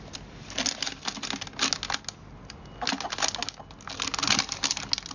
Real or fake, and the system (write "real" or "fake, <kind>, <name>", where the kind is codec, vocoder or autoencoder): real